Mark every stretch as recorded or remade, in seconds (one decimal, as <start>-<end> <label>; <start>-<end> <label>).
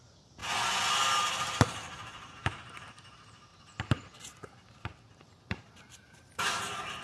0.0-0.4 remade; 0.4-1.4 recorded; 1.4-3.5 remade; 3.5-5.5 recorded; 5.5-7.0 remade